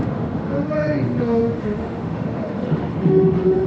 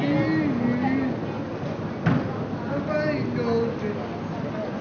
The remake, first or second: first